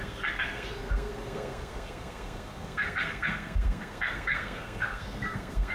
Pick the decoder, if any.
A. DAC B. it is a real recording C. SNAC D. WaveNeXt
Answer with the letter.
C